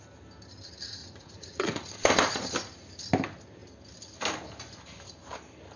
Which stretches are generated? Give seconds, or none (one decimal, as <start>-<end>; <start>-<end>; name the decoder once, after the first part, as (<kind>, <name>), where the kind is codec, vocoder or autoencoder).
1.0-1.9 (vocoder, Vocos)